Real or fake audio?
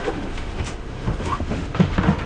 fake